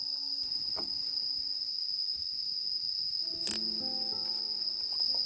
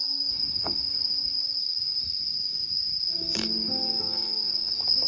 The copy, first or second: second